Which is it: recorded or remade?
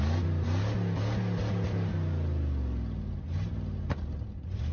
recorded